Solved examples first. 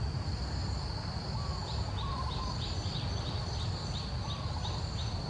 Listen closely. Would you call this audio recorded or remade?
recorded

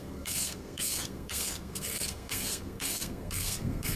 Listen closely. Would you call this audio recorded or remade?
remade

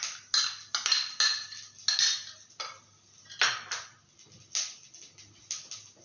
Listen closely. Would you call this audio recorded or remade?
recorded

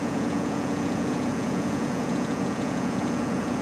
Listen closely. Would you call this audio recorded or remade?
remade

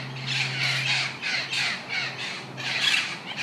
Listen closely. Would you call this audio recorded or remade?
recorded